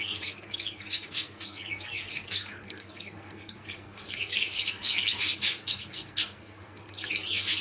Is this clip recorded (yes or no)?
no